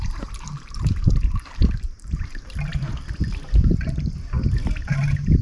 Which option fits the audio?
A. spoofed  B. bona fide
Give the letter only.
A